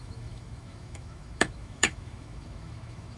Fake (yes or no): yes